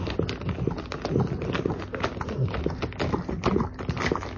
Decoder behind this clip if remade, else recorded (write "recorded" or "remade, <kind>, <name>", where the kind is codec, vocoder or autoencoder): recorded